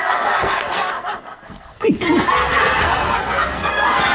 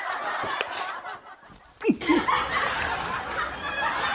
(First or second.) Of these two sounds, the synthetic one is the first